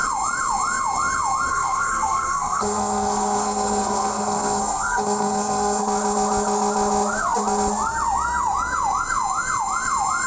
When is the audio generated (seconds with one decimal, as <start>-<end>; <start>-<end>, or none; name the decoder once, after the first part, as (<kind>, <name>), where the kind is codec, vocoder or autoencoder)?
1.5-5.8 (codec, SNAC)